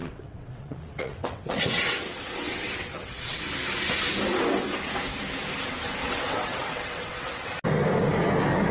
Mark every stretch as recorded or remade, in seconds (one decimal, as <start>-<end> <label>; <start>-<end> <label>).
0.0-3.4 remade; 3.4-6.0 recorded; 6.0-7.5 remade; 7.5-8.7 recorded